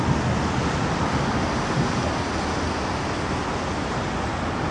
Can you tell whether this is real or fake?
real